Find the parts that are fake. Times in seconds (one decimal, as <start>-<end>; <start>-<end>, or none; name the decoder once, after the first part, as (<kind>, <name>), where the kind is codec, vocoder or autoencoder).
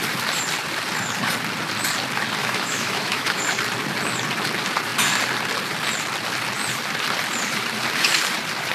2.4-3.4 (autoencoder, DAC-VAE)